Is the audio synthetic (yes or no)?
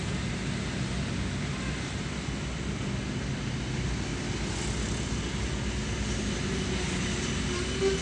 no